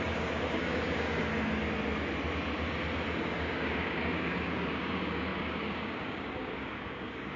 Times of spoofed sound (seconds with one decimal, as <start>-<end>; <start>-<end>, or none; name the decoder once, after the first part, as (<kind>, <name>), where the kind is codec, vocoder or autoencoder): 0.0-1.3 (codec, DAC); 3.2-7.4